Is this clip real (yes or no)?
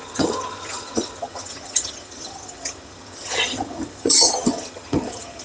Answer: no